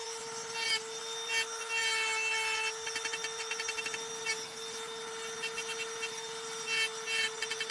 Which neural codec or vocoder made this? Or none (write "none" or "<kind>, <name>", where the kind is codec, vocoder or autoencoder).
none